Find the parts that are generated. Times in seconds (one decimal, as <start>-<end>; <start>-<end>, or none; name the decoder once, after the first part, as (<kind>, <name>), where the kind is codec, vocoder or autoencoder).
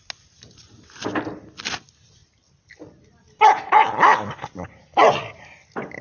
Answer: none